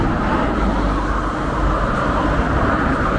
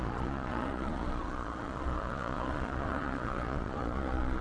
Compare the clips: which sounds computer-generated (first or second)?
second